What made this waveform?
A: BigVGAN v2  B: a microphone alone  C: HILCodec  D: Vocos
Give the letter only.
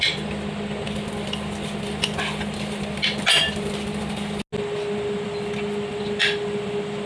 B